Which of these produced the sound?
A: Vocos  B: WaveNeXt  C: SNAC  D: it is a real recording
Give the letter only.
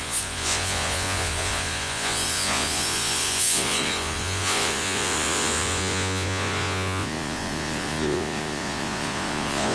A